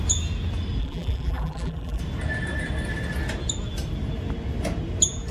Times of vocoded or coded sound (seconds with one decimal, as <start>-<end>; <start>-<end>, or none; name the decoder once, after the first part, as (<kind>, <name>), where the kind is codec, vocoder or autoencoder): 0.8-2.0 (vocoder, BigVGAN v2)